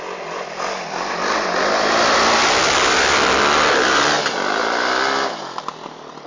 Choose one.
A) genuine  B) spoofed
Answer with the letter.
A